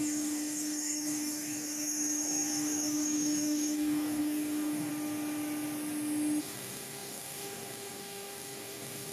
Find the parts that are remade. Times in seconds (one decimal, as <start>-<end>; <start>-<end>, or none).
0.0-4.9; 6.4-9.1

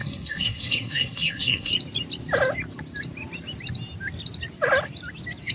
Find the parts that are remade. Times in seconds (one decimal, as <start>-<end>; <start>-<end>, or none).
0.0-1.7

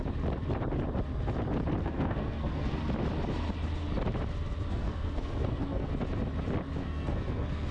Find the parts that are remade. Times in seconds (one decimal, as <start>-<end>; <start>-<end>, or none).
1.8-2.8; 4.7-5.9; 6.8-7.7

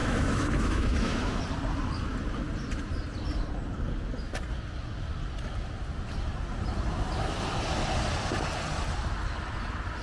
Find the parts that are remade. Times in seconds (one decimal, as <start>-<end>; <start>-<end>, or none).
0.0-1.4

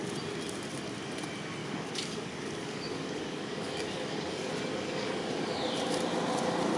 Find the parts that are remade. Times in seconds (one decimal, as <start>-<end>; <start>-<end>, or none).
1.6-5.7

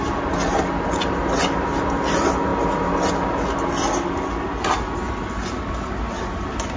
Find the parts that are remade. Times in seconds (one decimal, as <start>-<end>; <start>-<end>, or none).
none